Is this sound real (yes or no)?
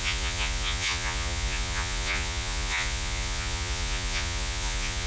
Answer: no